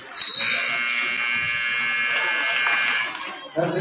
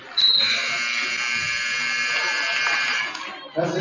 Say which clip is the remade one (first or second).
second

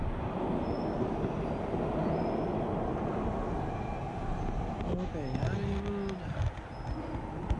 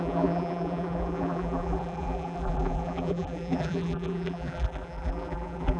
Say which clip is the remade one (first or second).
second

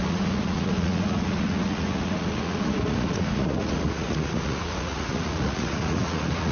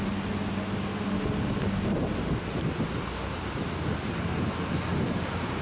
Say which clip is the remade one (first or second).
first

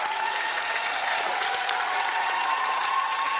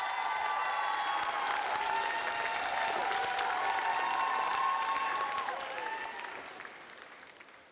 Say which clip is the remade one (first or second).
first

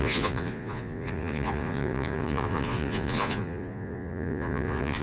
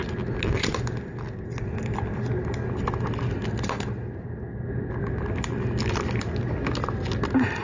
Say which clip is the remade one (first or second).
first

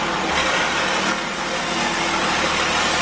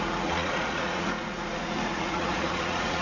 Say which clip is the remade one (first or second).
second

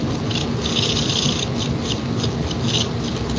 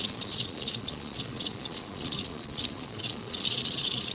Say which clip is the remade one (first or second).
second